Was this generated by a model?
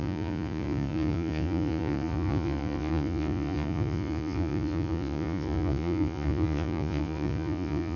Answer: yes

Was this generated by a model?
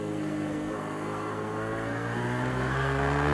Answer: yes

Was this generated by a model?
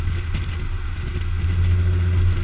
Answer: no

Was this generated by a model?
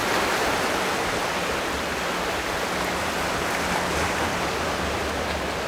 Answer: no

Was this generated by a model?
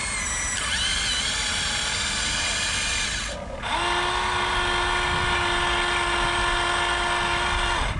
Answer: no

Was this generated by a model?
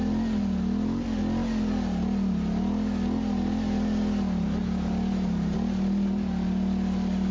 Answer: no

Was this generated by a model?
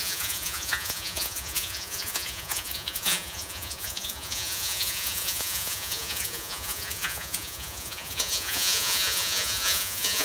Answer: yes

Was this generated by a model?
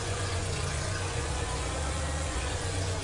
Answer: yes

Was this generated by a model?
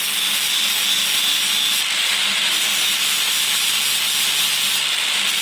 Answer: no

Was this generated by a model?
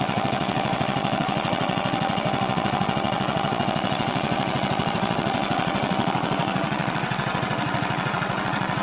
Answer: yes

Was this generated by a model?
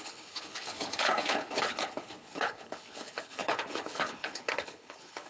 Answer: yes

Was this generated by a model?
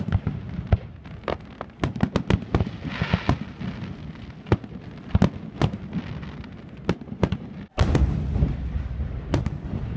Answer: no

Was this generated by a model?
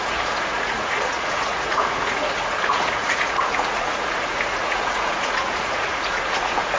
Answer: yes